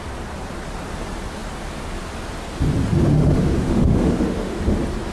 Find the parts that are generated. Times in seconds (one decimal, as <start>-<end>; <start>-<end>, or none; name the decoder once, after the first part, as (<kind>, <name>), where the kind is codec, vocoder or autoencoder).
3.1-4.6 (autoencoder, DAC-VAE)